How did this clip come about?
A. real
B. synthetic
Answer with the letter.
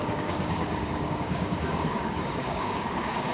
B